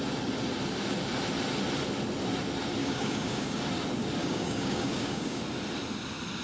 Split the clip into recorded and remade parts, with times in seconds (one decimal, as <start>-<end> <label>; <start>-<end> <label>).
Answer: 0.0-2.8 recorded; 2.8-3.6 remade; 3.6-4.2 recorded; 4.2-5.4 remade; 5.4-6.4 recorded